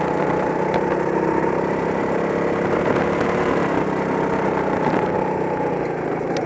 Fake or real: real